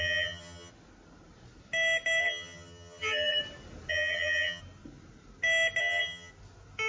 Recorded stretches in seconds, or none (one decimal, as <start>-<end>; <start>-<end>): 0.7-2.2; 3.4-3.9; 4.6-5.8; 6.3-6.9